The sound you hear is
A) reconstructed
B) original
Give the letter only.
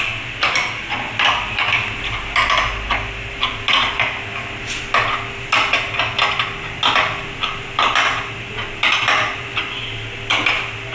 B